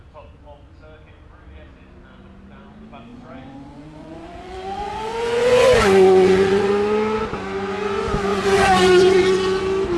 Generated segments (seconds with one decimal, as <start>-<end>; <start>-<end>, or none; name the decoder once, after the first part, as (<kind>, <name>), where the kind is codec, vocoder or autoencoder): 3.1-7.2 (vocoder, Vocos); 8.3-9.6